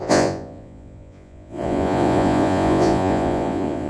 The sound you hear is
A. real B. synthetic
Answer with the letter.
B